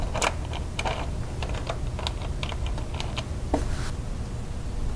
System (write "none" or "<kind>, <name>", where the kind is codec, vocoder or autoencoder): none